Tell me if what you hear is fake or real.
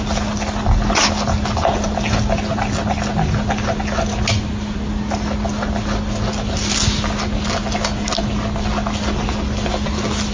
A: real